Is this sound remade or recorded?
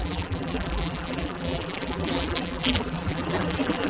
remade